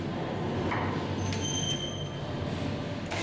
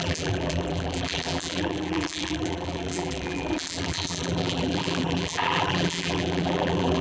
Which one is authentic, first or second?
first